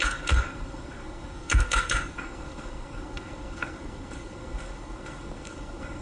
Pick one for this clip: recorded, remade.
remade